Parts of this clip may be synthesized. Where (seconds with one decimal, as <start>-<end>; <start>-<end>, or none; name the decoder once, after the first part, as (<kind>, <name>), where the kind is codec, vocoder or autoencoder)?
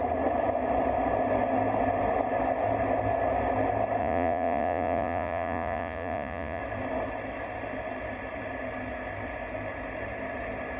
4.0-6.6 (vocoder, Vocos)